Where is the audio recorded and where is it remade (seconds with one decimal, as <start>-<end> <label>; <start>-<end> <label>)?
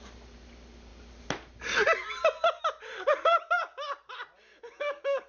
0.0-5.3 recorded